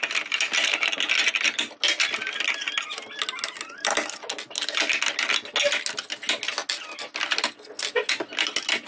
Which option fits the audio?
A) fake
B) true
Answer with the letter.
B